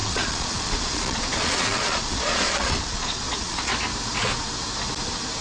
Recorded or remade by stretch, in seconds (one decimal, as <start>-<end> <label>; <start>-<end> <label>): 0.0-3.7 remade; 3.7-5.4 recorded